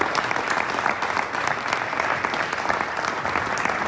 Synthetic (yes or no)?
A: no